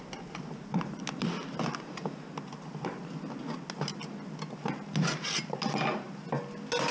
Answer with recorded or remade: recorded